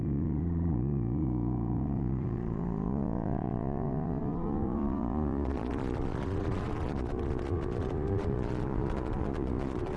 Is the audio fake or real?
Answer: fake